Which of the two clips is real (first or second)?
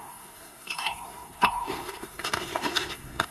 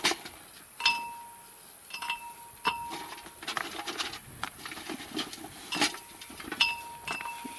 second